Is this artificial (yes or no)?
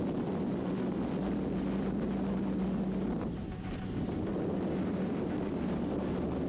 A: no